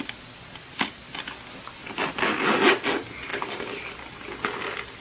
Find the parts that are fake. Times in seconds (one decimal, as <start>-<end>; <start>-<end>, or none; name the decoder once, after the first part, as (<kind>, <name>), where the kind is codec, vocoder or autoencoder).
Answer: 1.8-2.7 (vocoder, BigVGAN v2); 3.3-3.9